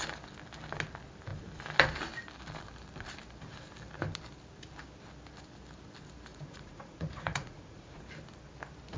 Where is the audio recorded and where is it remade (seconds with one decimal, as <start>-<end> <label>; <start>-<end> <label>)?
0.0-6.3 recorded; 6.3-8.0 remade; 8.0-9.0 recorded